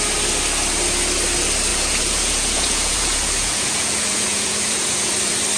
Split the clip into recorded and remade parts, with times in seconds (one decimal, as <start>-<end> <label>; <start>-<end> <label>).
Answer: 0.0-1.7 recorded; 1.7-5.1 remade; 5.1-5.6 recorded